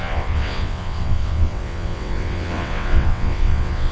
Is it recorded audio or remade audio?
remade